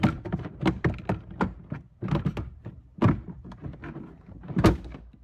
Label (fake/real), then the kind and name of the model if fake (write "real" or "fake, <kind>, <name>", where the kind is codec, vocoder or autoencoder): real